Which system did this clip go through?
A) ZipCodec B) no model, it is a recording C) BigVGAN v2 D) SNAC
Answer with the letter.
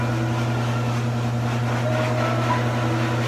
B